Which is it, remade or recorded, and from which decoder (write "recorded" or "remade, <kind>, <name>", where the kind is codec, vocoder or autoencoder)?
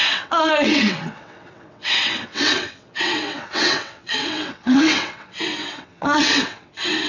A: remade, vocoder, WaveNeXt